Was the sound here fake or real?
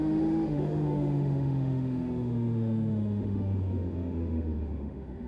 fake